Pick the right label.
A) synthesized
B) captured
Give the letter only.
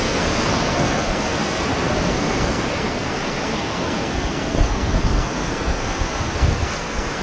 A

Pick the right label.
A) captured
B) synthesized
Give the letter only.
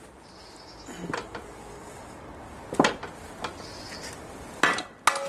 A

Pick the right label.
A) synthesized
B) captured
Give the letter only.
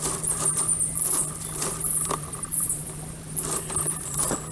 B